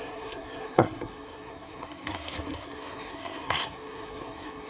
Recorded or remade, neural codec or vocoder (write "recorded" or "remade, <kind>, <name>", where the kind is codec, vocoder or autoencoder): remade, codec, SNAC